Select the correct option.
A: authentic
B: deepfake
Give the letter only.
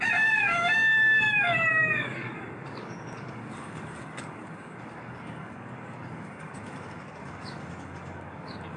B